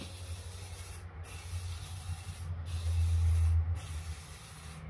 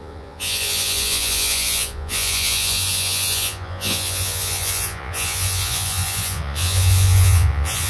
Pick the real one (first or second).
first